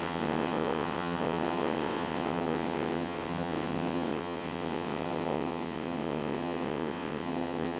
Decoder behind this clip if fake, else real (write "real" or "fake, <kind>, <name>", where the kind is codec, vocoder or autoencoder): fake, vocoder, WaveNeXt